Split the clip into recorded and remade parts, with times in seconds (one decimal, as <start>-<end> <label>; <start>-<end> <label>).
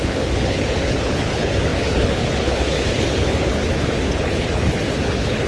0.0-5.5 remade